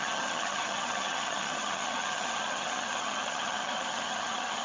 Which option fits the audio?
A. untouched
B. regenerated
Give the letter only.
B